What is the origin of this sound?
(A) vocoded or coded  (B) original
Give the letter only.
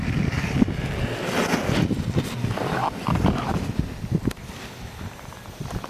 B